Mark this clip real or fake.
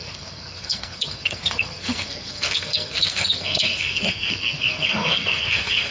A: fake